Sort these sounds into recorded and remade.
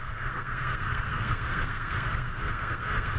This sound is remade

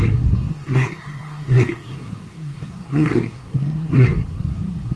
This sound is remade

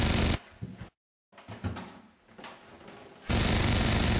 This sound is recorded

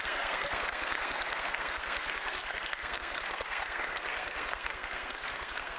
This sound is remade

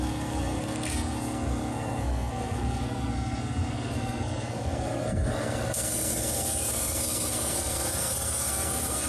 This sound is remade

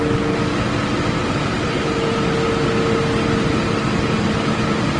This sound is recorded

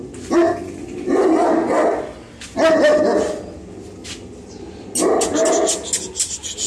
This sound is recorded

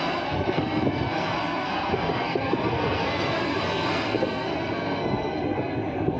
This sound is remade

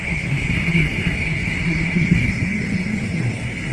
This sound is remade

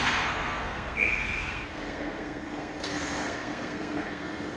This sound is remade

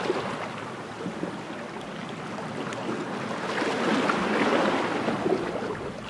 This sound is recorded